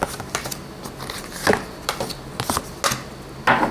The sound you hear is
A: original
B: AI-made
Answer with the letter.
A